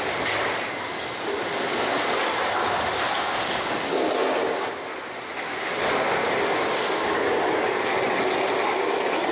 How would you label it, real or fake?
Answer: real